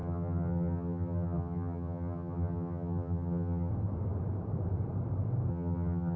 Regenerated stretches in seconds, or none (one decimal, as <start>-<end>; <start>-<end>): 0.0-3.7; 5.5-6.2